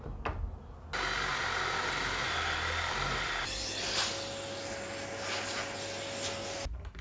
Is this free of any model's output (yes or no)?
yes